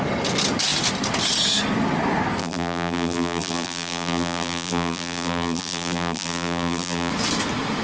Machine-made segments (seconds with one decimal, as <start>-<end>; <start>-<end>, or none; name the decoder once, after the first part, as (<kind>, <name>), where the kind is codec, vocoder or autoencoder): 2.4-7.1 (vocoder, BigVGAN v2)